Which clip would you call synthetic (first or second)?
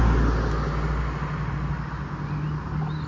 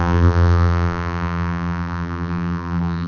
second